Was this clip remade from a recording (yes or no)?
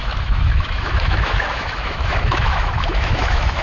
yes